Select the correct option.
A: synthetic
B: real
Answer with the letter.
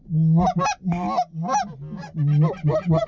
B